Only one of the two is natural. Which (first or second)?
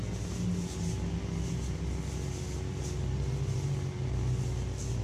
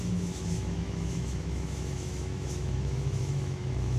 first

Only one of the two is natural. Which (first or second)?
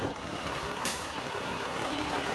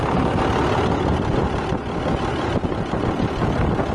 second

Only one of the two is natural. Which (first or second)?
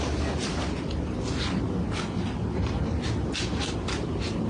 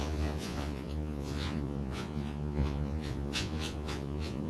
first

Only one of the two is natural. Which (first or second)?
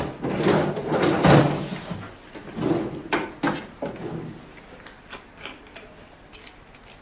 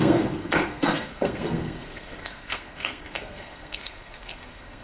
first